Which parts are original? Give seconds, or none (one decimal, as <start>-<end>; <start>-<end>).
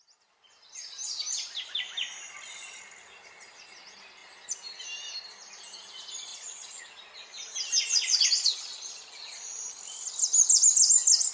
0.0-6.3; 6.8-7.9; 9.6-11.3